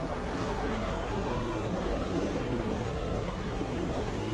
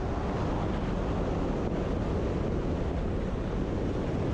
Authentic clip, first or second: second